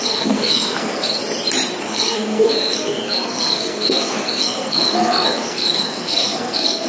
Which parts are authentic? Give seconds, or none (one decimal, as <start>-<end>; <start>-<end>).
1.2-1.8